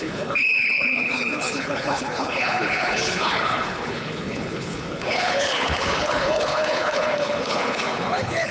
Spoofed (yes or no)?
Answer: yes